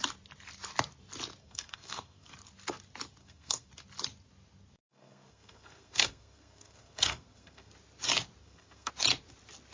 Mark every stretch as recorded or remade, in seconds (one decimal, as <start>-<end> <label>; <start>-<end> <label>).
0.0-1.4 recorded; 1.4-2.3 remade; 2.3-3.2 recorded; 3.2-3.7 remade; 3.7-4.8 recorded; 4.8-7.7 remade; 7.7-8.4 recorded; 8.4-8.9 remade; 8.9-9.7 recorded